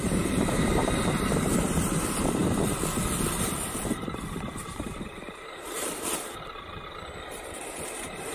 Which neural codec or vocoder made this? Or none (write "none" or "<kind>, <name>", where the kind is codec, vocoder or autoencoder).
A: vocoder, BigVGAN v2